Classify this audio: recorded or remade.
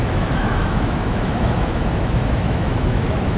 remade